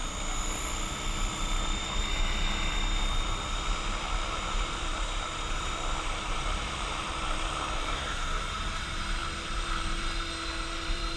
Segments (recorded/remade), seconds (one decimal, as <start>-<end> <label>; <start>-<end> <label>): 0.0-4.3 recorded; 4.3-11.2 remade